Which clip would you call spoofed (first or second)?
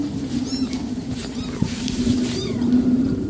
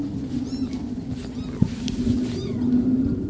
first